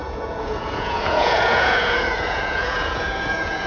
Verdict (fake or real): fake